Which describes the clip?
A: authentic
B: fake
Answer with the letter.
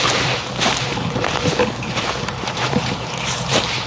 B